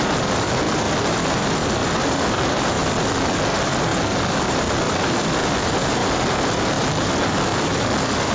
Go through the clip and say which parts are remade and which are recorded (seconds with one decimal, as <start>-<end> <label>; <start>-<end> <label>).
0.0-8.3 remade